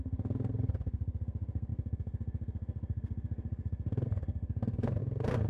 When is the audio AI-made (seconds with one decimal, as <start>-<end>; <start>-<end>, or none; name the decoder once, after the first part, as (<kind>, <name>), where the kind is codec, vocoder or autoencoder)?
0.0-5.5 (codec, SNAC)